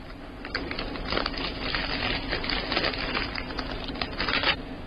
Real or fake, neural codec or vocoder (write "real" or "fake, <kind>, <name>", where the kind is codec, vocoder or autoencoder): real